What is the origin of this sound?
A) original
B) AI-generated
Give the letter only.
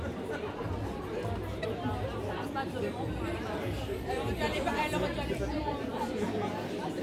A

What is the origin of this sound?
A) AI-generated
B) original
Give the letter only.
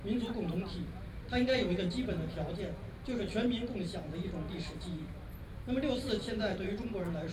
A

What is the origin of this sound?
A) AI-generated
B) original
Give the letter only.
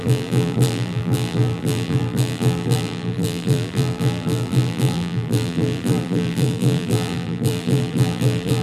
A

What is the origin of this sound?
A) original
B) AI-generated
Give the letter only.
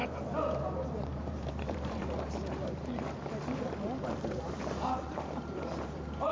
B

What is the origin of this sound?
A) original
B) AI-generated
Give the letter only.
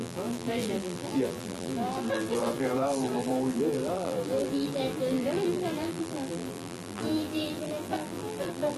B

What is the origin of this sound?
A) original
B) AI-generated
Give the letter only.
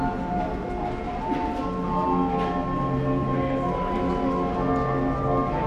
A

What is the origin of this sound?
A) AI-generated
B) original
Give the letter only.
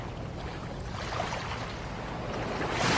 B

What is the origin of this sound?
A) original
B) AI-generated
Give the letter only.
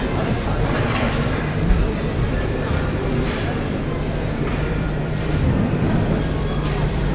B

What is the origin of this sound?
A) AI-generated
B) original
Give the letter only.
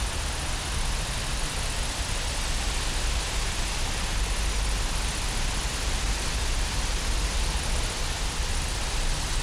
B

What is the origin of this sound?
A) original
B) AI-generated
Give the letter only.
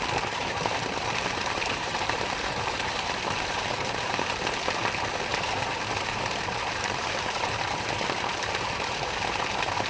B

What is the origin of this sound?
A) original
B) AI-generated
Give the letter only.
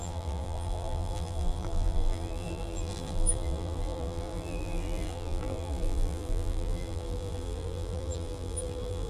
B